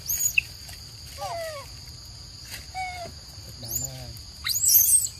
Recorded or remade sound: recorded